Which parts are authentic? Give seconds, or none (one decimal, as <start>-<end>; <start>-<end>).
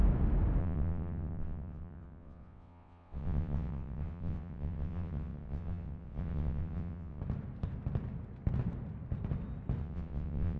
0.0-0.6; 7.2-9.8